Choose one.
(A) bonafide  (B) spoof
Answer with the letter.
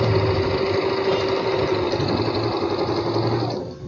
A